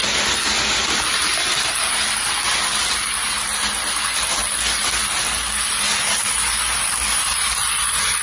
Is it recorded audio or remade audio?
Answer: recorded